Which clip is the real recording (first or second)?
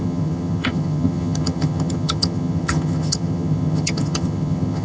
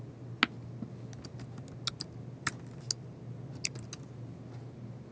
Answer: second